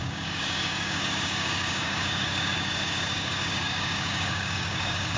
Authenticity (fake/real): fake